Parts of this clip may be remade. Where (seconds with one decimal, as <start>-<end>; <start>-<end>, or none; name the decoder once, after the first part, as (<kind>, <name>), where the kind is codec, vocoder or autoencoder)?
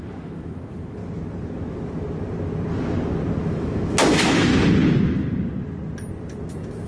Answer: 0.0-1.0 (autoencoder, DAC-VAE); 3.4-4.5; 6.5-6.9